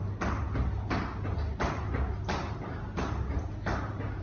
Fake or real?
real